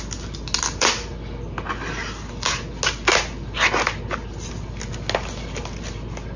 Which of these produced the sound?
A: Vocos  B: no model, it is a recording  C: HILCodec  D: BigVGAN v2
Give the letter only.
B